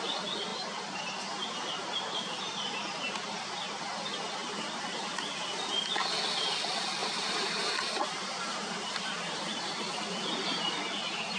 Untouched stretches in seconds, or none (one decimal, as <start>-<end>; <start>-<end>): 0.0-0.5; 3.8-4.4; 5.0-7.0; 9.8-11.4